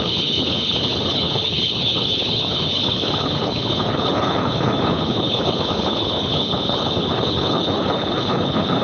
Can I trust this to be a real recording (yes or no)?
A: no